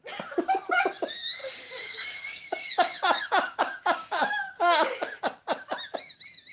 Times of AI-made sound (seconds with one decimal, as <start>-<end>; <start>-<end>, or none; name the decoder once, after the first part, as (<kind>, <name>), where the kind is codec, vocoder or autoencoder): 1.4-5.2 (codec, DAC)

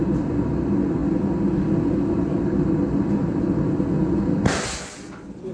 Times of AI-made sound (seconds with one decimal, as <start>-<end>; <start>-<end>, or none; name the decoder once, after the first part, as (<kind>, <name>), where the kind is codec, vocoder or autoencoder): none

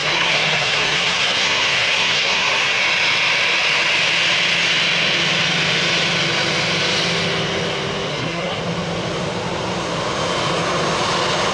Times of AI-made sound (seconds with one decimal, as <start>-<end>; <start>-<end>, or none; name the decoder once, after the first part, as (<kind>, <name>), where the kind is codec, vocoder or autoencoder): 0.0-2.8 (codec, SNAC); 8.1-8.6